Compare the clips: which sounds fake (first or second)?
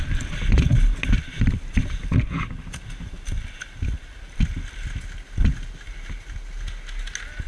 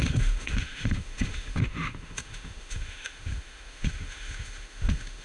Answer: second